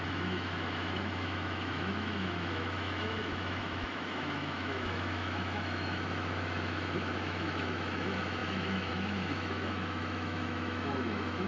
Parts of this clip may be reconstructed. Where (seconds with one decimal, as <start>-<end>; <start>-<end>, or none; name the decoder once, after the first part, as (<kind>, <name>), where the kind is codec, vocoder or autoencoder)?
0.0-11.5 (autoencoder, DAC-VAE)